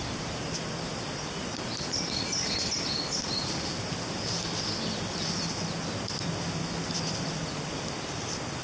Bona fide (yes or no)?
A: yes